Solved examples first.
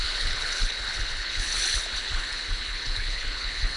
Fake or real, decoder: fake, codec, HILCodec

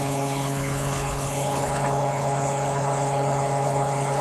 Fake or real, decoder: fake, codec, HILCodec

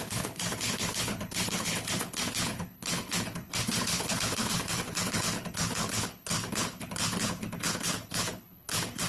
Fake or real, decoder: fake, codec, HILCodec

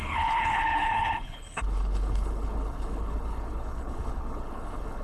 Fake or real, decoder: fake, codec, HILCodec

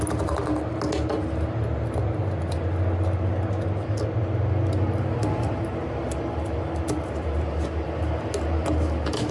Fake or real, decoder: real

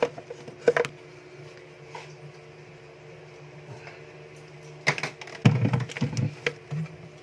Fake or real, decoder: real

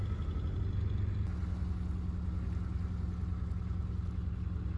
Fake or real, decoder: real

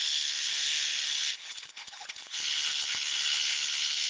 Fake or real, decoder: fake, codec, HILCodec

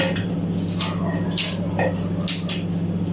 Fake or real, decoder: real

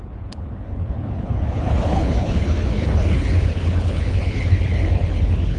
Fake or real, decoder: fake, codec, HILCodec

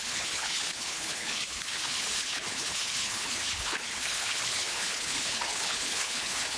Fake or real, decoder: fake, codec, HILCodec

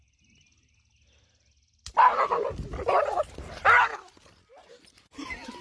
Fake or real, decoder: real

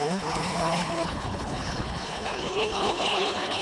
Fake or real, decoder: fake, codec, HILCodec